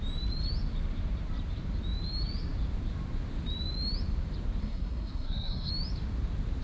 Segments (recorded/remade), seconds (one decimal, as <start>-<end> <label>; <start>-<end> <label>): 0.0-4.6 recorded; 4.6-5.7 remade; 5.7-6.6 recorded